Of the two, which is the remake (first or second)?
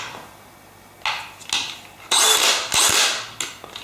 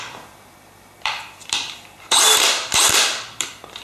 second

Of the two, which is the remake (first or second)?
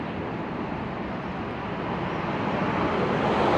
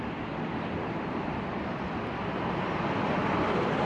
second